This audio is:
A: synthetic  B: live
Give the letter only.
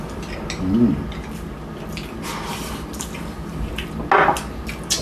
B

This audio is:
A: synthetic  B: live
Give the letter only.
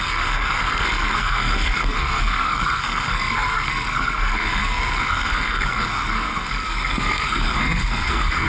A